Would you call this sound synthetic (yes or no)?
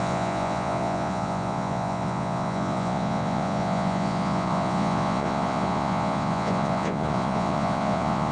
yes